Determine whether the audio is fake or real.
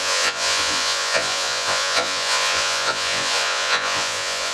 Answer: fake